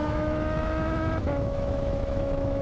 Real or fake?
fake